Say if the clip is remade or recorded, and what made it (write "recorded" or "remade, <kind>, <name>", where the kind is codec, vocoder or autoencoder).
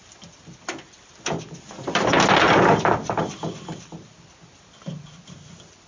recorded